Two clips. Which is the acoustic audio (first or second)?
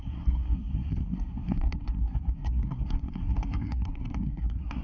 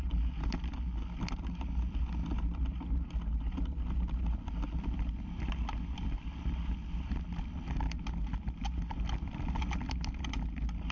second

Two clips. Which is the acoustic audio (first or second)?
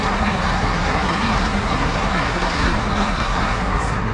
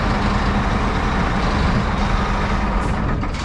second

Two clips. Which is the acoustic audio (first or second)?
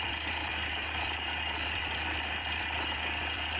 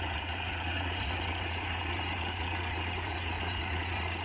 first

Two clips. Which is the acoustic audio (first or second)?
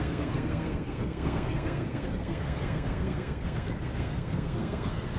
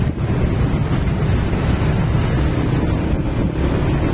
second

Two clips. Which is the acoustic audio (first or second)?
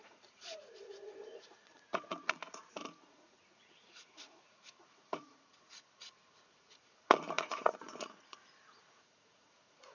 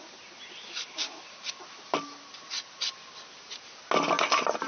second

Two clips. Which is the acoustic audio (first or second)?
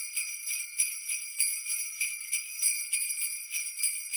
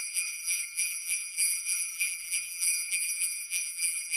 first